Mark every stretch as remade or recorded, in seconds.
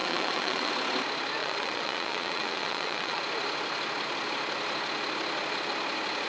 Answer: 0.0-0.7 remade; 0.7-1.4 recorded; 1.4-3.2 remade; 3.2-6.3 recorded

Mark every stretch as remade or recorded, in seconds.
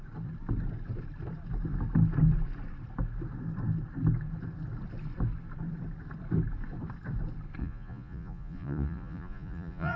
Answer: 0.0-7.6 recorded; 7.6-10.0 remade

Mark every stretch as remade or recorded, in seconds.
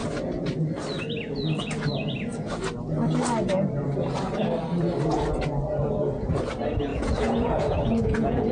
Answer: 0.0-6.9 recorded; 6.9-8.5 remade